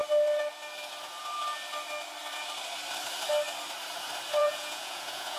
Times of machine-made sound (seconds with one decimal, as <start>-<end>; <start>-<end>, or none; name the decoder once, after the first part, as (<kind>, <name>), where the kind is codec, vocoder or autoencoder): 4.4-5.4 (vocoder, Vocos)